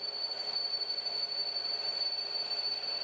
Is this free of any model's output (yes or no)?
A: yes